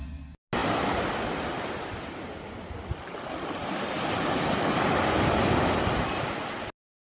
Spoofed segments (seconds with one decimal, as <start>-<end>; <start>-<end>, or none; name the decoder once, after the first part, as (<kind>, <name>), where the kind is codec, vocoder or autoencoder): none